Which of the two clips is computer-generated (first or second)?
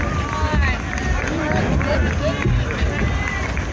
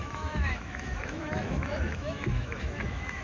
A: second